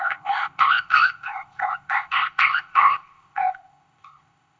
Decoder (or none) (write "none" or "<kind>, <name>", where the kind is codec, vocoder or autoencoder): codec, ZipCodec